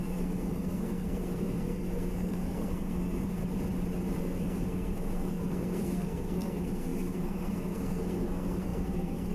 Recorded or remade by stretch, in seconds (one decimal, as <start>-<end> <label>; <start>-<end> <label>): 0.0-3.4 remade; 3.4-4.2 recorded; 4.2-9.3 remade